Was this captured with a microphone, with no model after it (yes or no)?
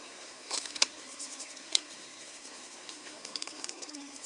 no